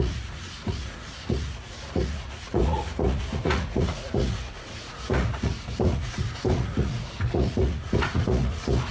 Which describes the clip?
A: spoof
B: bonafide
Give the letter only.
A